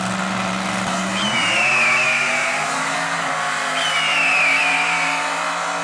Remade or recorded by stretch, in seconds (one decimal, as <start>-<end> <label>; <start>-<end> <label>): 0.0-5.8 recorded